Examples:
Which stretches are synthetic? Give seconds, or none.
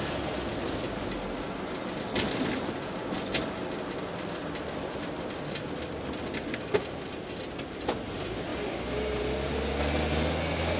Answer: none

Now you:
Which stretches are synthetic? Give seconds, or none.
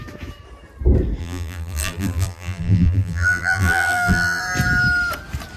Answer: 1.2-4.4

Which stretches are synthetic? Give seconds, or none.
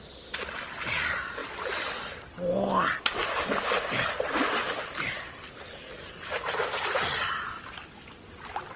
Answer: none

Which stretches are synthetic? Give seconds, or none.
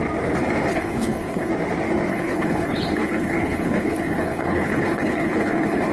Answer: 0.7-1.5; 2.1-5.9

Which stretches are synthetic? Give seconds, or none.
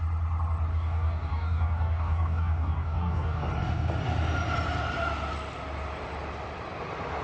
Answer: 0.7-3.5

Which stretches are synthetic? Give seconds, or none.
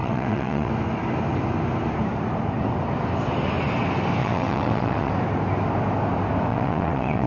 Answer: 0.0-0.7; 4.2-5.1; 6.5-7.3